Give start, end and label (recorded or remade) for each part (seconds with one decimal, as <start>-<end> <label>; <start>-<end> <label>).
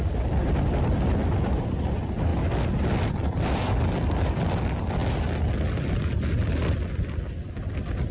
0.0-8.1 recorded